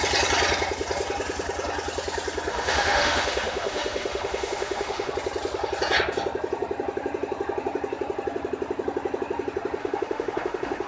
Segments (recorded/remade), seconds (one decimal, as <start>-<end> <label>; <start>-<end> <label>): 0.0-2.5 recorded; 2.5-5.1 remade; 5.1-9.8 recorded; 9.8-10.9 remade